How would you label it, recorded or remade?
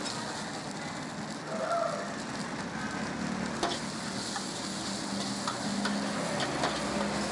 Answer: recorded